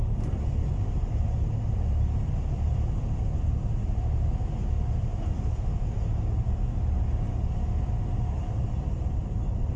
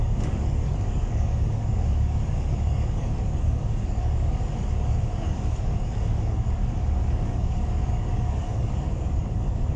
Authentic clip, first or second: first